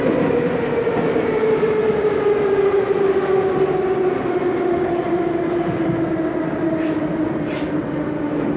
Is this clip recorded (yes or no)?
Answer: yes